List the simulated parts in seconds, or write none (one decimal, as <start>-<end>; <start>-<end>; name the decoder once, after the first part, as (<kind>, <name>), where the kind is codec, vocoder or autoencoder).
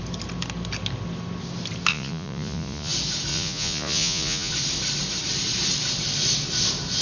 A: 1.9-2.9 (vocoder, Vocos); 3.3-4.5